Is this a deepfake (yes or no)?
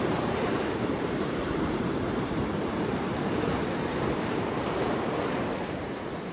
yes